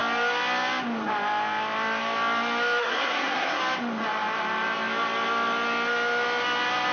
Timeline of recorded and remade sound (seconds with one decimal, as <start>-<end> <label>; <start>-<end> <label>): 0.0-2.8 recorded; 2.8-3.6 remade; 3.6-6.9 recorded